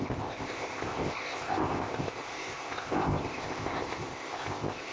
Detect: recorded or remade remade